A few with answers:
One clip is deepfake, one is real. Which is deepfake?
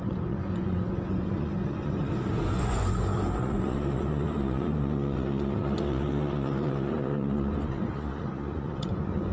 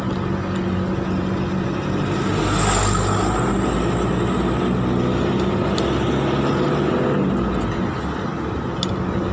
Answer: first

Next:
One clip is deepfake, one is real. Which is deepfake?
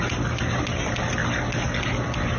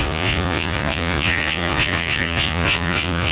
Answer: second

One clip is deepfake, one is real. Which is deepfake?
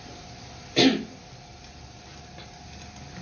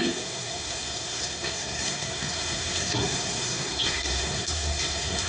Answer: second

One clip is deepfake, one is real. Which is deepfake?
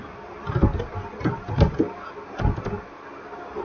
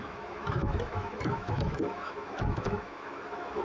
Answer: second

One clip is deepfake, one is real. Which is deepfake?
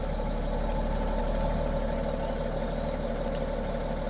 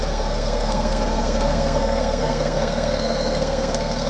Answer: second